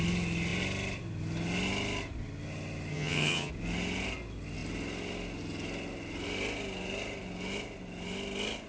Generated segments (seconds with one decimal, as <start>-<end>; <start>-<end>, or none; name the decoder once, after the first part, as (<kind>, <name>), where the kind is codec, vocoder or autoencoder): 2.9-3.5 (vocoder, HiFi-GAN)